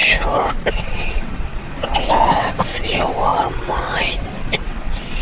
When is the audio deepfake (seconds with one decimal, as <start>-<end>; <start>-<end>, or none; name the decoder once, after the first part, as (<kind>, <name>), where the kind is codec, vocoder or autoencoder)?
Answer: 0.7-5.2 (vocoder, WaveNeXt)